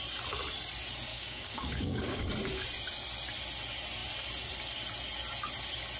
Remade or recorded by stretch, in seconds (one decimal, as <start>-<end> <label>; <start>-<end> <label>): 0.0-1.1 recorded; 1.1-2.3 remade; 2.3-6.0 recorded